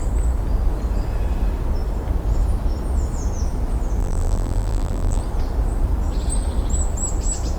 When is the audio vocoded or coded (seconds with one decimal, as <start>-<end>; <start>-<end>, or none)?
4.0-5.2